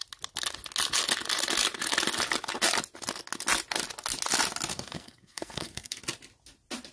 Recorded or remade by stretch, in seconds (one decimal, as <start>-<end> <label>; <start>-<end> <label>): 0.0-4.7 recorded; 4.7-6.0 remade; 6.0-6.9 recorded